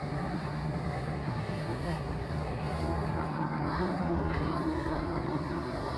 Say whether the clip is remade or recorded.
remade